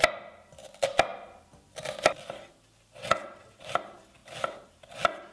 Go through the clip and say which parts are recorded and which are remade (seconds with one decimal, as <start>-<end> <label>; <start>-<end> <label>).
0.0-3.0 recorded; 3.0-3.6 remade; 3.6-5.3 recorded